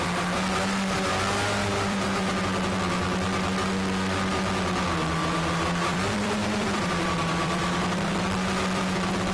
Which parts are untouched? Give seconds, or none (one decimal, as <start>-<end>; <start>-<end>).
0.0-1.6; 2.4-5.2; 7.8-9.3